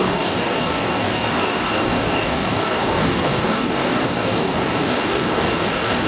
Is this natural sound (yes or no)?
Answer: no